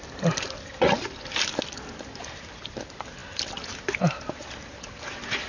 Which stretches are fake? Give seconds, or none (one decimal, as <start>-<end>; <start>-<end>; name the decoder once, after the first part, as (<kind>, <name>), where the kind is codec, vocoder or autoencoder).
none

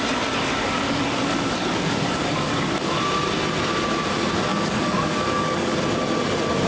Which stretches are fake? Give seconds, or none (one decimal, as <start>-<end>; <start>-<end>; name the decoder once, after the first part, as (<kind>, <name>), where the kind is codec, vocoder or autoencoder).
0.5-3.0 (codec, DAC); 4.5-5.8

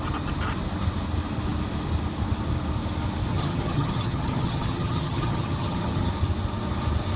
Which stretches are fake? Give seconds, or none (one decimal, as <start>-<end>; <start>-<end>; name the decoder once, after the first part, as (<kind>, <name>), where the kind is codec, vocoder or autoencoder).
3.3-6.1 (vocoder, HiFi-GAN)

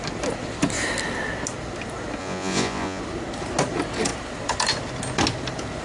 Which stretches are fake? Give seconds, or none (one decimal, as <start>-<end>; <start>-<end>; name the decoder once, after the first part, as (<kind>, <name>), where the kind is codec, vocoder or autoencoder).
2.2-3.0 (vocoder, Vocos)

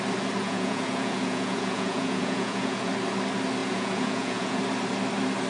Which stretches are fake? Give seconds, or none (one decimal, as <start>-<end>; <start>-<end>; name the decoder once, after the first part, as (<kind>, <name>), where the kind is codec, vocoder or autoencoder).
0.4-2.9 (vocoder, Vocos); 3.6-4.6

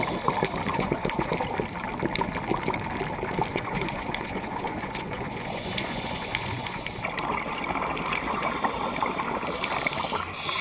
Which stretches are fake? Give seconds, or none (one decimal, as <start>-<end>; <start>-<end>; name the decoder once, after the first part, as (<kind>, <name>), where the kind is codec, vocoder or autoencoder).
0.7-1.3 (vocoder, Vocos); 3.5-6.9